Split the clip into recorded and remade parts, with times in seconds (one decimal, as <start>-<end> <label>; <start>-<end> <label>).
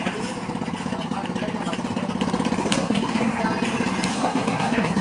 0.0-2.6 recorded; 2.6-3.4 remade; 3.4-4.1 recorded; 4.1-5.0 remade